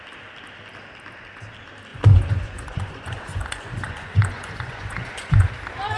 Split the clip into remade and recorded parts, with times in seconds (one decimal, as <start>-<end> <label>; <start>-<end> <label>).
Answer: 0.0-1.9 recorded; 1.9-5.5 remade; 5.5-6.0 recorded